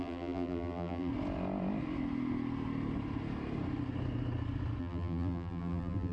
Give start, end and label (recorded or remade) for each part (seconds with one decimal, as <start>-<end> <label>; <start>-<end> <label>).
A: 0.0-1.1 remade; 1.1-4.8 recorded; 4.8-6.1 remade